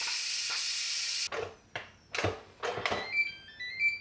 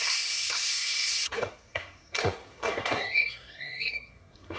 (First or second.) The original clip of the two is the first